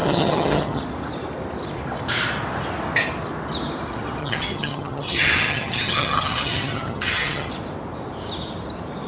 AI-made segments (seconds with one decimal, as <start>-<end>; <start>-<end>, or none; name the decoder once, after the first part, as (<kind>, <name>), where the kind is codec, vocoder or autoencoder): 0.0-0.8 (vocoder, HiFi-GAN); 4.2-7.5